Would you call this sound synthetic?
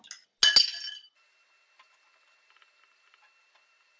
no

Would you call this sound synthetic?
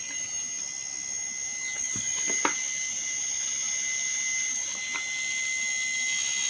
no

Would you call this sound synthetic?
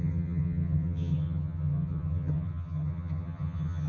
yes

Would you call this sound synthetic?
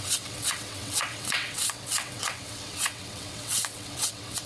yes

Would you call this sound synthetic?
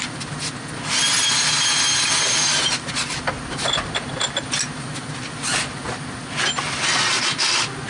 no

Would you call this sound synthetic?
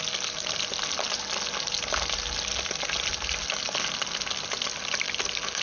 no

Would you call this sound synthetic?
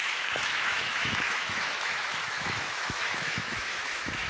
yes